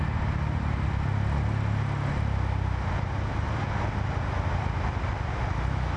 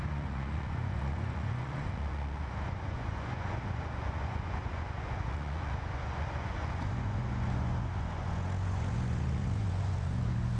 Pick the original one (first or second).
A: first